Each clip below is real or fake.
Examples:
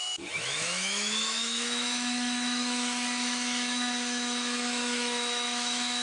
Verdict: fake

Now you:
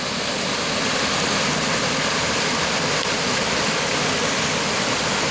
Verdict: real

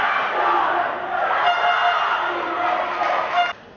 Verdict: real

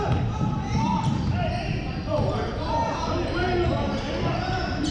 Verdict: real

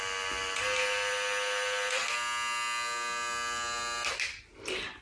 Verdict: real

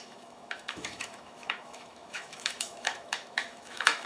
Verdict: fake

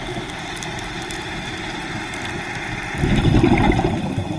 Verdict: real